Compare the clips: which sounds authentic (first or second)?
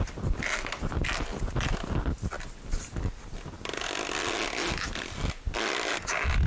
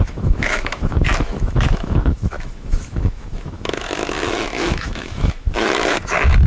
first